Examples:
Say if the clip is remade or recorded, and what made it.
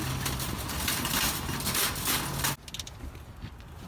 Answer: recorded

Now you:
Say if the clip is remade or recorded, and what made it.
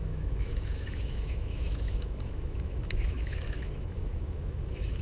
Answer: remade, autoencoder, DAC-VAE